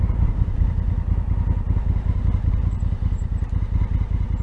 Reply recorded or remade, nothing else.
recorded